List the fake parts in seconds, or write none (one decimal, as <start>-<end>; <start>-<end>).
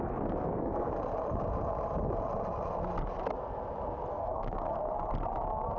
0.0-0.9; 4.1-4.8